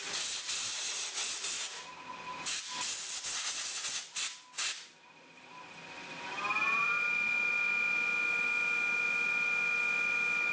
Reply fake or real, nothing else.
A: real